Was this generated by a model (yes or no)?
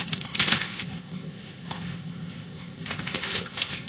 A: yes